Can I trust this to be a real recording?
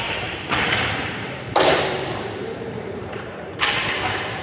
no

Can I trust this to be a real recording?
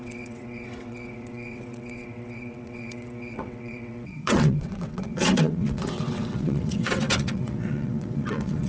no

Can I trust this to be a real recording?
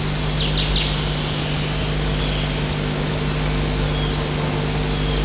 yes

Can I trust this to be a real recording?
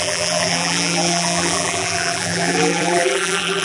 no